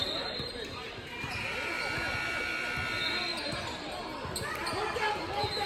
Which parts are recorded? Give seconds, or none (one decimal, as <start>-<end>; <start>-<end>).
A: 1.7-3.3; 4.0-5.7